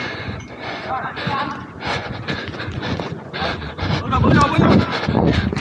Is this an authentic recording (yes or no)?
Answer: no